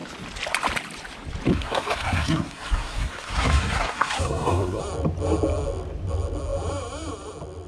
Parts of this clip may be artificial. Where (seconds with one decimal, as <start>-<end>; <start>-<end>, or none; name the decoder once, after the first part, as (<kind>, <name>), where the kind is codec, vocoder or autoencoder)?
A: 1.5-4.8 (codec, SNAC)